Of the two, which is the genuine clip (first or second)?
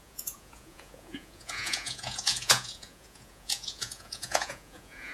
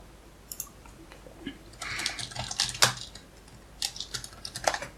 second